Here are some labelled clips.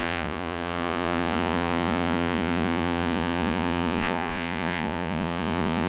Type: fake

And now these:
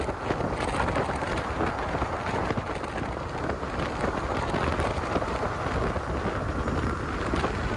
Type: real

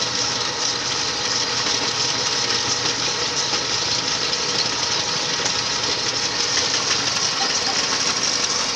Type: real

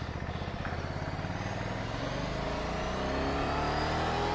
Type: real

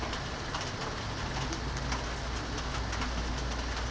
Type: real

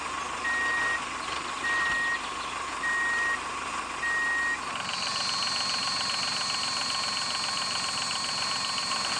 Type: real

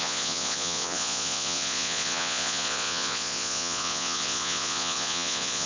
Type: fake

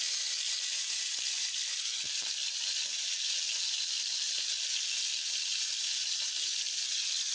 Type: real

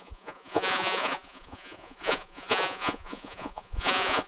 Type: fake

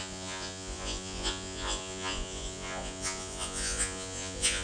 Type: fake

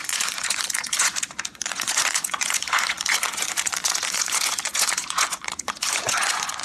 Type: fake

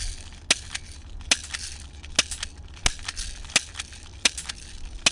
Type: real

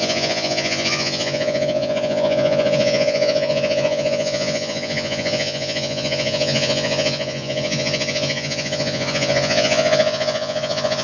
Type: fake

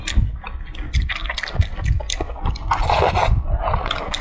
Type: real